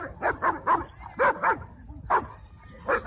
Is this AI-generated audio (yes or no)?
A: no